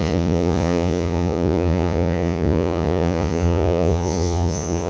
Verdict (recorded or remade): remade